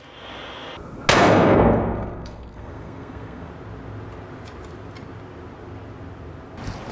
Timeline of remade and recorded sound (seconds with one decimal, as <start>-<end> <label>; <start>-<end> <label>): 0.0-1.1 recorded; 1.1-3.5 remade; 3.5-6.9 recorded